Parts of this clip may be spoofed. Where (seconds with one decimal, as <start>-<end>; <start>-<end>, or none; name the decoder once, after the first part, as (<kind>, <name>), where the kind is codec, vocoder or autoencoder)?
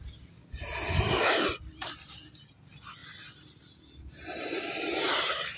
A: 0.0-0.4 (vocoder, BigVGAN v2); 1.0-3.0; 4.8-5.6